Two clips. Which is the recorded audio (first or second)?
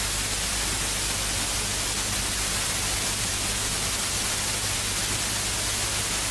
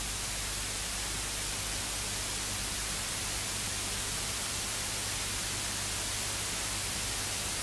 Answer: first